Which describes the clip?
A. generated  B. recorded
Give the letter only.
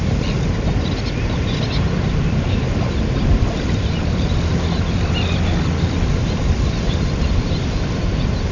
B